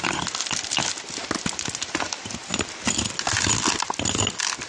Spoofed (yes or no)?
no